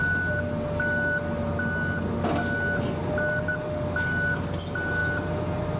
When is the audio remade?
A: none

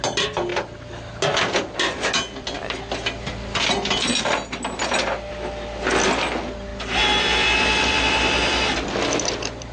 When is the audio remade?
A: none

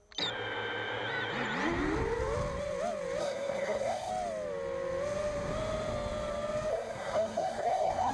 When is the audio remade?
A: 3.2-4.1 (codec, SNAC); 6.7-8.1

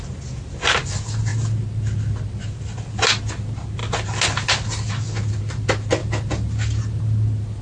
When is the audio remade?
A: none

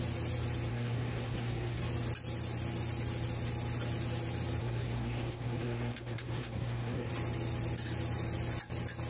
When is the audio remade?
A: 0.7-1.8 (codec, SNAC); 4.6-7.1